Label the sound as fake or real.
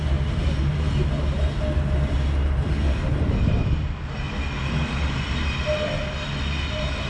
real